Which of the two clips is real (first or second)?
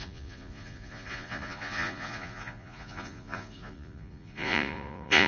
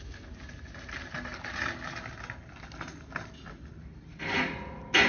second